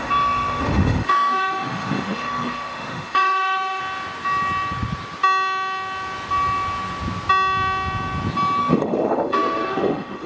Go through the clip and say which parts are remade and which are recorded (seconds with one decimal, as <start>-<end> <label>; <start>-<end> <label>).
0.0-3.8 remade; 3.8-8.6 recorded; 8.6-10.3 remade